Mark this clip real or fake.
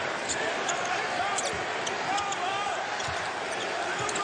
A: real